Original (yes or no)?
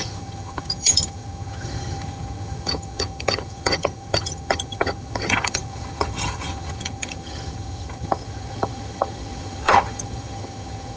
no